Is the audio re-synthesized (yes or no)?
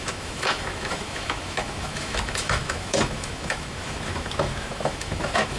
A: yes